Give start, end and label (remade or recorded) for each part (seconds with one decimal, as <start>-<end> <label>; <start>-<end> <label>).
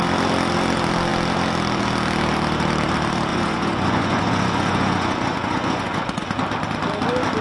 0.0-3.3 recorded; 3.3-6.5 remade; 6.5-7.4 recorded